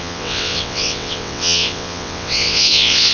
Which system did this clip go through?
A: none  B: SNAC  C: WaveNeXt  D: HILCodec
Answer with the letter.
C